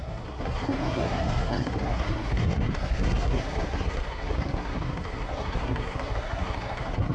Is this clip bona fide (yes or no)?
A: no